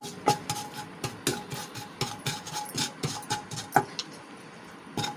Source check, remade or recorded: recorded